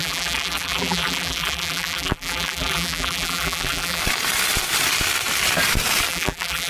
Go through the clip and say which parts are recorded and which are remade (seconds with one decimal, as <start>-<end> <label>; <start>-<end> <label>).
0.0-4.0 remade; 4.0-6.1 recorded; 6.1-6.7 remade